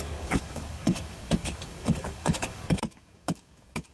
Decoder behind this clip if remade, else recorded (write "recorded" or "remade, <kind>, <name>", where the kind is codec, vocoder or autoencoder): remade, codec, DAC